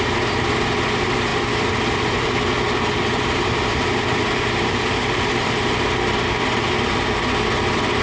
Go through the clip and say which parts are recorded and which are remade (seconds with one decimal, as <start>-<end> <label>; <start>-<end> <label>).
0.0-8.0 recorded

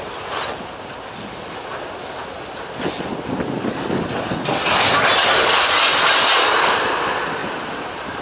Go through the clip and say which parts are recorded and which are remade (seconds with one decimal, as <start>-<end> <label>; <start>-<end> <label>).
0.0-5.2 recorded; 5.2-6.2 remade; 6.2-7.4 recorded; 7.4-8.2 remade

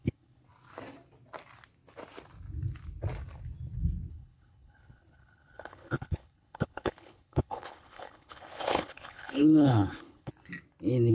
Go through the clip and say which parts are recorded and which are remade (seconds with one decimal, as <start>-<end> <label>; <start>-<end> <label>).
0.0-0.4 remade; 0.4-4.1 recorded; 4.1-10.3 remade; 10.3-11.1 recorded